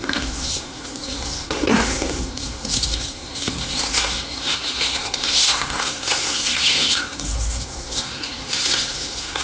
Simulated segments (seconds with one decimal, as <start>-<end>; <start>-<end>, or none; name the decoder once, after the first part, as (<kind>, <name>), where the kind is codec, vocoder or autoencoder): 0.0-9.4 (codec, SNAC)